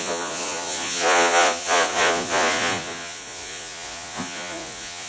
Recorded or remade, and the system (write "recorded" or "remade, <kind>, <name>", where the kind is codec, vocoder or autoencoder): remade, vocoder, Vocos